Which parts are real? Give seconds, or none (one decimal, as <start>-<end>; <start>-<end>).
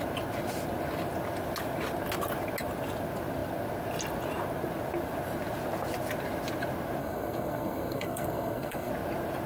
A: 0.0-7.0; 8.9-9.5